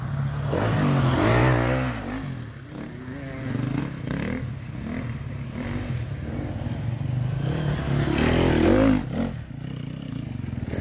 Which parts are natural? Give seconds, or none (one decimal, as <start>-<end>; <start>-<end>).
0.0-10.8